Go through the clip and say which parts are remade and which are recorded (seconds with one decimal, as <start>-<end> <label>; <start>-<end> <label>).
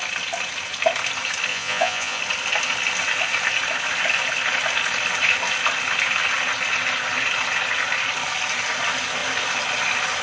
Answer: 0.0-1.5 recorded; 1.5-2.2 remade; 2.2-10.2 recorded